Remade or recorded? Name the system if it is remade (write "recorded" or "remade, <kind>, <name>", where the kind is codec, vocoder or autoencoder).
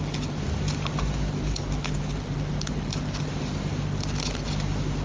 recorded